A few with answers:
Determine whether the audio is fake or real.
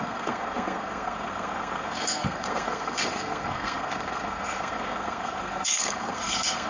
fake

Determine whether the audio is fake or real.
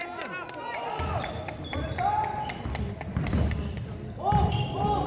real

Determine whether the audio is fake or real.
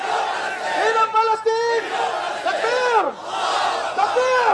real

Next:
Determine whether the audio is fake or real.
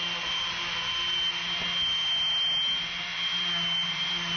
real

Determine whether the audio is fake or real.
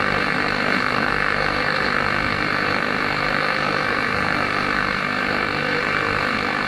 fake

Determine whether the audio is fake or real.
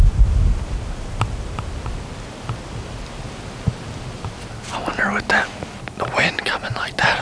real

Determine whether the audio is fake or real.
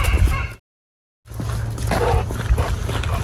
real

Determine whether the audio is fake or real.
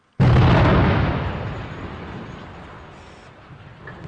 real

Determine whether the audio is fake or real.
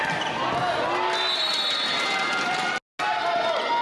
real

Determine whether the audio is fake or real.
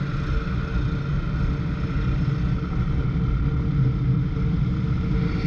real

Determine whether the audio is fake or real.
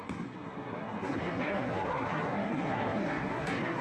fake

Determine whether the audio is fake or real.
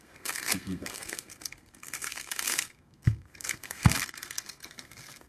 fake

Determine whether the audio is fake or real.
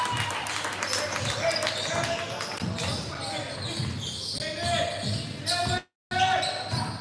real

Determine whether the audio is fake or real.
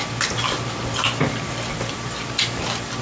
real